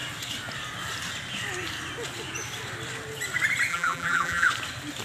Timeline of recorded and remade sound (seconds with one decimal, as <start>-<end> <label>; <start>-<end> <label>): 0.0-3.7 recorded; 3.7-4.5 remade; 4.5-5.0 recorded